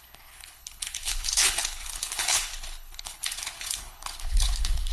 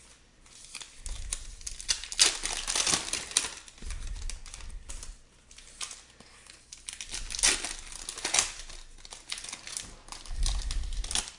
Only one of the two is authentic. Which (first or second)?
second